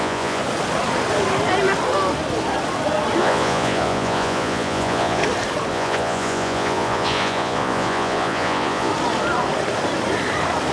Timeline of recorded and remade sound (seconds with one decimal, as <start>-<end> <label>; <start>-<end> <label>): 0.0-0.4 remade; 0.4-3.2 recorded; 3.2-5.2 remade; 5.2-5.7 recorded; 5.7-8.9 remade; 8.9-10.7 recorded